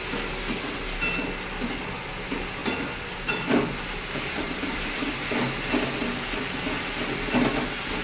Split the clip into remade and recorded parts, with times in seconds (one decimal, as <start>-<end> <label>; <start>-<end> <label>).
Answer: 0.0-2.6 recorded; 2.6-5.1 remade; 5.1-8.0 recorded